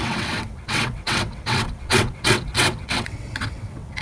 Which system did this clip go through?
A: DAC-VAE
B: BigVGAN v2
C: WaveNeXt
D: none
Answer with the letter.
C